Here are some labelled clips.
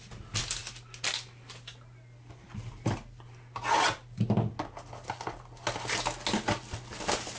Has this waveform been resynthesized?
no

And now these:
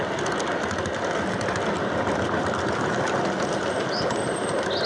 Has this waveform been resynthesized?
no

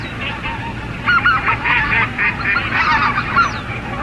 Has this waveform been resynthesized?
no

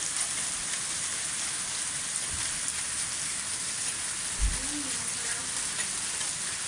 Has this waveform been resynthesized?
no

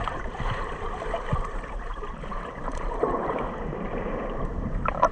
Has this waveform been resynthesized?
yes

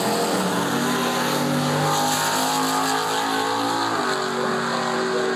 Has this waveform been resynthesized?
no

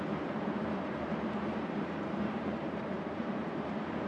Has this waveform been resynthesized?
yes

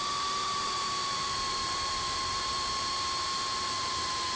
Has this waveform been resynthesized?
yes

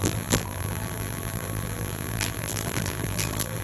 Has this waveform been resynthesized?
yes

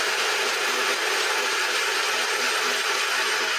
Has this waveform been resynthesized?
no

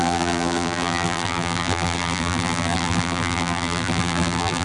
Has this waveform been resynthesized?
yes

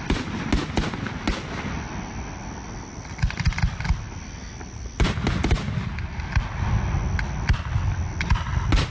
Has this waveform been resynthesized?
no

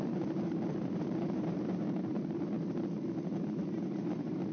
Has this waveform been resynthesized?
yes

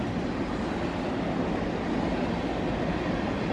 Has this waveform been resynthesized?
no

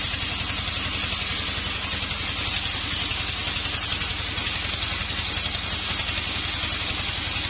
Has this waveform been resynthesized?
no